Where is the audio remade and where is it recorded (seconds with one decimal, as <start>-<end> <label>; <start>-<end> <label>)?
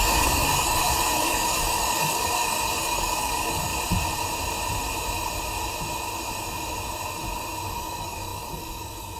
0.0-3.7 remade; 3.7-7.7 recorded; 7.7-9.2 remade